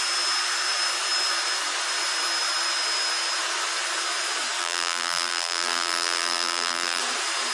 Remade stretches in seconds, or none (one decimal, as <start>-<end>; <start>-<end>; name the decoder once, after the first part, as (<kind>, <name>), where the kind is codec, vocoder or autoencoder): 4.6-7.0 (vocoder, BigVGAN v2)